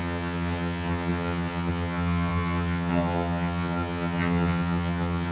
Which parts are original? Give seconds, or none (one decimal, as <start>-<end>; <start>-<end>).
none